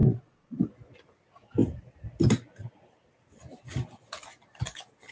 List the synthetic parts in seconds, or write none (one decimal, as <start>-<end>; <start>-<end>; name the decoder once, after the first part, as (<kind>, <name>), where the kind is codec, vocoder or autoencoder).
0.0-0.6 (vocoder, Vocos)